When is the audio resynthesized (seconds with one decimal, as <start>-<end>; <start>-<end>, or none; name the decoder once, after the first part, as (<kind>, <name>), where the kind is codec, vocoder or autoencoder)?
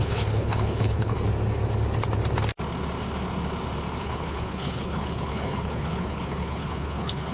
0.0-1.3 (codec, HILCodec); 4.0-7.3